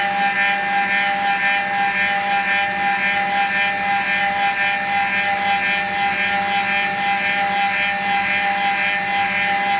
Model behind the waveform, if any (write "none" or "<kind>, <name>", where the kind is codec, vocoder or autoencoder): none